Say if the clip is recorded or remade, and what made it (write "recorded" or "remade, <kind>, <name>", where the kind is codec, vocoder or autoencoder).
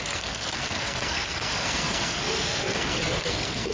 remade, codec, SNAC